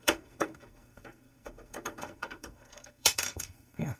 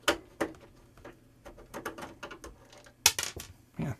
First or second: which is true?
second